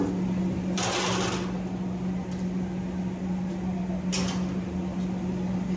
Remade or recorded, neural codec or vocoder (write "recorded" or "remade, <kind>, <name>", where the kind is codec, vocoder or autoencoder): recorded